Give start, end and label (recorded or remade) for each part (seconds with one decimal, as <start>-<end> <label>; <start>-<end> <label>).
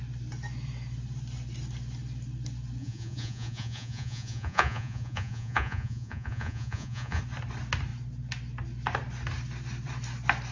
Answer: 0.0-2.8 recorded; 2.8-7.2 remade; 7.2-10.5 recorded